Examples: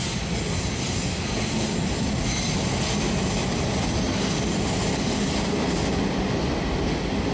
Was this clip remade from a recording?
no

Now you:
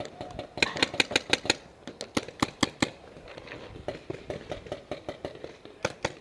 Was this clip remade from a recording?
no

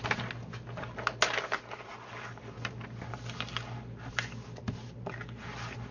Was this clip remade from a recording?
no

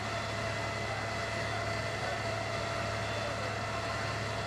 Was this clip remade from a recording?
no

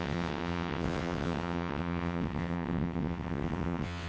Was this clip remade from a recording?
yes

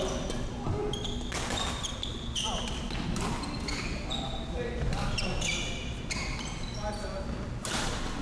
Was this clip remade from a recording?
no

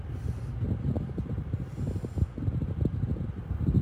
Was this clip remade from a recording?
no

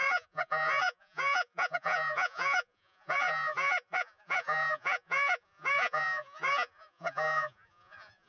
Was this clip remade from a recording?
yes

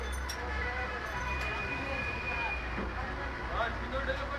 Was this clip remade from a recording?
no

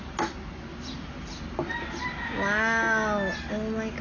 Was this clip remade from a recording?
no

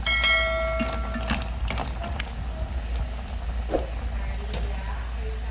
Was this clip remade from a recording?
no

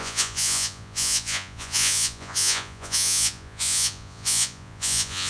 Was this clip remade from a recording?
yes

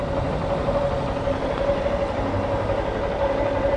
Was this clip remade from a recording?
no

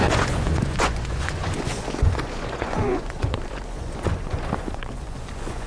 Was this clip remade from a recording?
yes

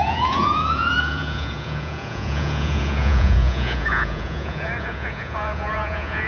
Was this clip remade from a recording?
yes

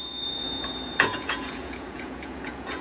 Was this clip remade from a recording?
yes